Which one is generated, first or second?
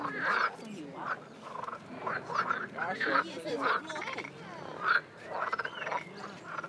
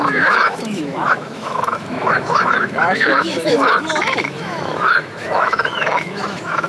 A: second